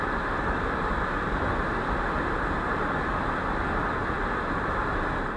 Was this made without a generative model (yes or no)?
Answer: yes